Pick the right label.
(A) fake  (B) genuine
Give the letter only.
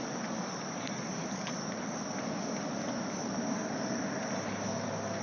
B